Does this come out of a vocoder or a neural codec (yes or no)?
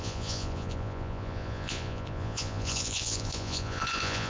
yes